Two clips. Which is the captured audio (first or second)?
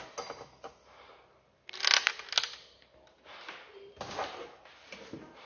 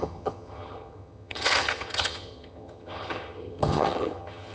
first